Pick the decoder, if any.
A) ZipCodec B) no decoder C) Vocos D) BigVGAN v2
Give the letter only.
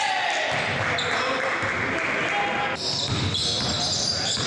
B